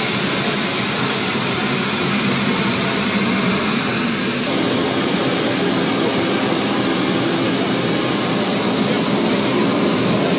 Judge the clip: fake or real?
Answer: fake